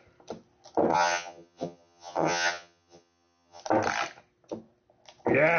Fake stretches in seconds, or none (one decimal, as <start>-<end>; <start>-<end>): 0.9-3.6